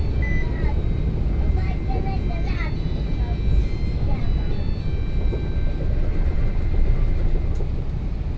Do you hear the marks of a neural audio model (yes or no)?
no